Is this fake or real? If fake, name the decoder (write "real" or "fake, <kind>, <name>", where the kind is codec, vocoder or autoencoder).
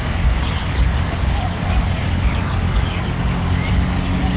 fake, codec, DAC